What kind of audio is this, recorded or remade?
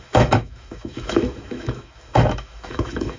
remade